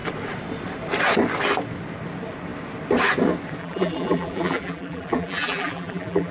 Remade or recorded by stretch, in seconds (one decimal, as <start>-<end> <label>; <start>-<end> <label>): 0.0-3.6 recorded; 3.6-6.3 remade

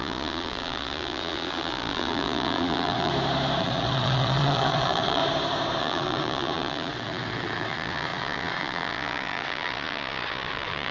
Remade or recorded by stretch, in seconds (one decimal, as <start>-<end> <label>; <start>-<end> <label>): 0.0-3.1 remade; 3.1-3.6 recorded; 3.6-5.2 remade; 5.2-5.8 recorded; 5.8-10.9 remade

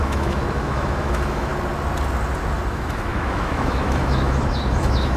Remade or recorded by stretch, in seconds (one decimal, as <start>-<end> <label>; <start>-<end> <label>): 0.0-1.5 remade; 1.5-2.7 recorded; 2.7-5.2 remade

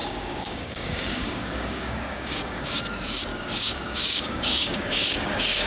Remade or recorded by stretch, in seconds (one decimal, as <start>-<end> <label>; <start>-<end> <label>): 0.0-2.8 remade; 2.8-3.3 recorded; 3.3-5.7 remade

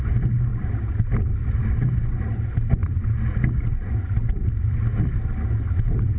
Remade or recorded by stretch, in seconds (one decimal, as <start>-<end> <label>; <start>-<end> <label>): 0.0-6.2 recorded

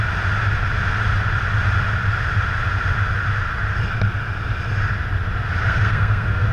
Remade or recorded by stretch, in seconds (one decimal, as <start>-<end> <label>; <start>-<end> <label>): 0.0-5.6 recorded; 5.6-6.5 remade

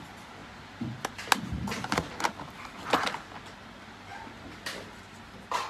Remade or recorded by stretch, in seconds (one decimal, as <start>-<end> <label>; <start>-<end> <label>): 0.0-5.7 recorded